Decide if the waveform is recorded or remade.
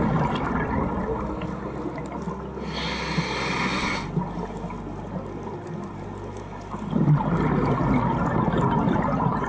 recorded